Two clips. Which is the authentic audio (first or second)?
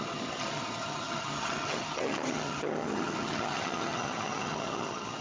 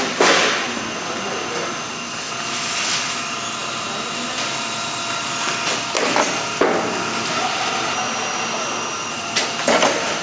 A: second